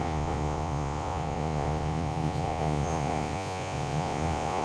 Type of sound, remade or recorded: remade